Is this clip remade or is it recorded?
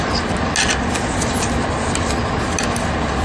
recorded